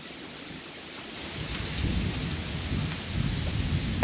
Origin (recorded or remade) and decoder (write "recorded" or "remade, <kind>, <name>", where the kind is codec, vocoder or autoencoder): recorded